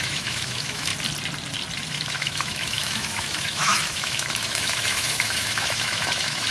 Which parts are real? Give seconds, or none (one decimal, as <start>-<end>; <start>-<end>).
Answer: 0.9-1.9